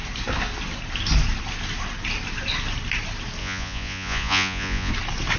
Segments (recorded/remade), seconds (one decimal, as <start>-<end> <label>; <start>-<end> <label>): 0.0-3.4 recorded; 3.4-4.9 remade; 4.9-5.4 recorded